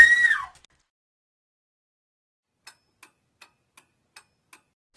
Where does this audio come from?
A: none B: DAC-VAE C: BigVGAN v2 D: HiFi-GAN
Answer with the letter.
A